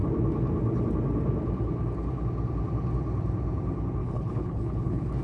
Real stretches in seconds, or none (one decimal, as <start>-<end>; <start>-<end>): 0.0-4.0